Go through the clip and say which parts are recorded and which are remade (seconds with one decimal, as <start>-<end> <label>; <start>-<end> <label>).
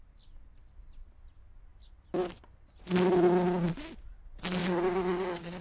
0.0-4.6 recorded; 4.6-5.6 remade